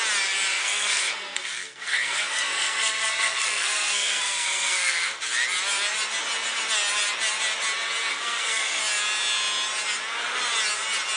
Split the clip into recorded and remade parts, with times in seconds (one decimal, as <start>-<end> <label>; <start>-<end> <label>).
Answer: 0.0-0.5 recorded; 0.5-5.2 remade; 5.2-8.1 recorded; 8.1-8.8 remade; 8.8-11.2 recorded